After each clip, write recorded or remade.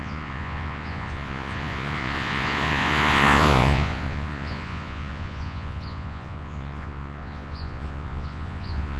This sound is remade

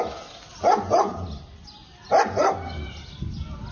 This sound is recorded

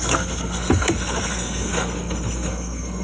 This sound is remade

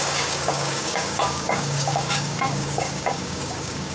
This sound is remade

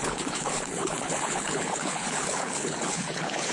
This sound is remade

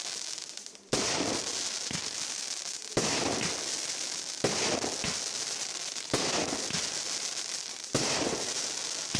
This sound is recorded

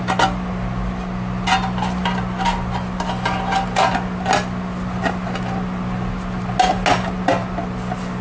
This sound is recorded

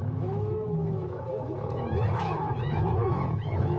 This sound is remade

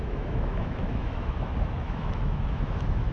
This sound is remade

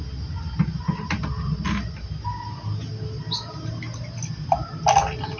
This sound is recorded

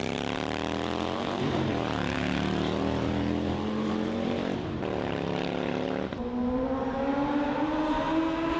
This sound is remade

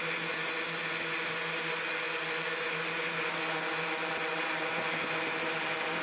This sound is recorded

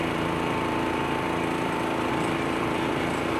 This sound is remade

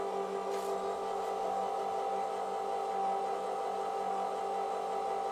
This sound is recorded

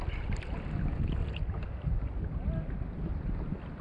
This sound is recorded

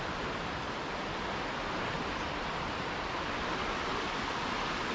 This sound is recorded